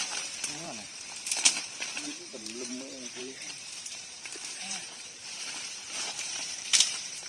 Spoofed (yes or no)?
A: yes